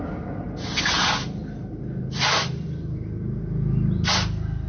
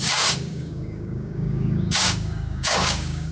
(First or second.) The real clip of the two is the first